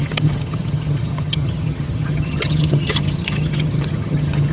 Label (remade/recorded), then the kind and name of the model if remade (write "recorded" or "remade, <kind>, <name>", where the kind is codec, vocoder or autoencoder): remade, vocoder, HiFi-GAN